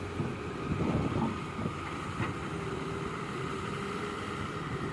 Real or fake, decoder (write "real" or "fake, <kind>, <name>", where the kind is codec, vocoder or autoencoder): fake, vocoder, BigVGAN v2